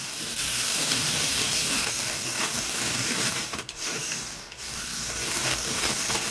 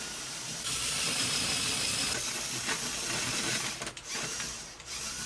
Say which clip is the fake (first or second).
first